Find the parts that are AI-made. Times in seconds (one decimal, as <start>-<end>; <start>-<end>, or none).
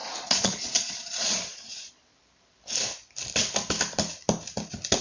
0.0-2.1